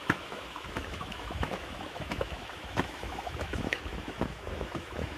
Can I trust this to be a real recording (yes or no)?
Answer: no